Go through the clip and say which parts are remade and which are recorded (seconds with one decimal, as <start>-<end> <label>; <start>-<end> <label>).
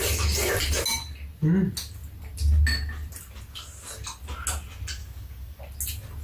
0.0-5.0 recorded; 5.0-5.6 remade; 5.6-6.2 recorded